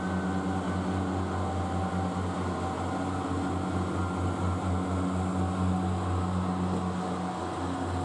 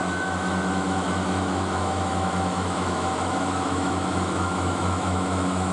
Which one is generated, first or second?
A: second